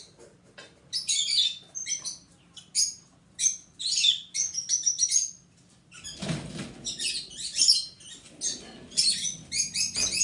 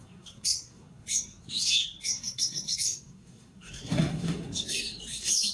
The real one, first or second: first